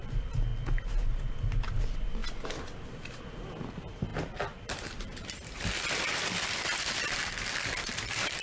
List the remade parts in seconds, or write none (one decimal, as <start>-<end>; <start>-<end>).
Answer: 0.0-0.5; 1.7-2.2; 3.6-8.4

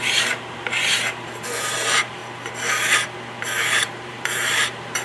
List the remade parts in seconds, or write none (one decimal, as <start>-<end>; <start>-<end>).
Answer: 0.0-2.2; 3.6-5.0

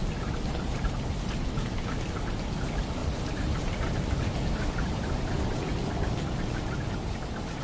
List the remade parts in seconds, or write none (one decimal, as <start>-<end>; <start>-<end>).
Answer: 3.0-3.6

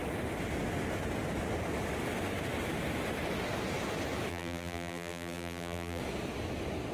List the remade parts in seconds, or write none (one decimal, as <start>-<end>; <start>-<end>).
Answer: 4.3-6.0

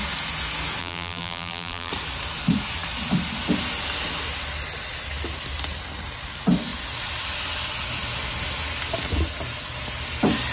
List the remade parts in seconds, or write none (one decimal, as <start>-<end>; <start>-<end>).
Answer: 0.8-1.9

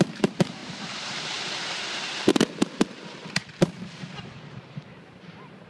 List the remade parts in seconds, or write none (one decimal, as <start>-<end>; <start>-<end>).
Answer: 0.0-5.7

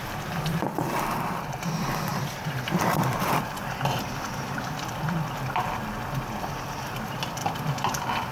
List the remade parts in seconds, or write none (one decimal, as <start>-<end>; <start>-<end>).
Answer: 0.0-1.4; 2.1-6.6

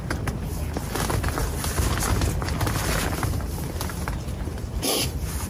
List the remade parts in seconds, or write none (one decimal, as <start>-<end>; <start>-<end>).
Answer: 0.0-5.5